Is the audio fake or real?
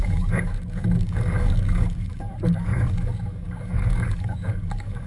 fake